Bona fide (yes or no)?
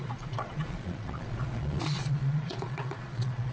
no